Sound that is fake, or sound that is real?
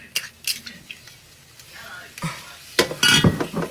real